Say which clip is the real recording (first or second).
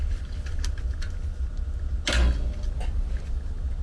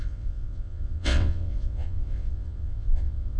first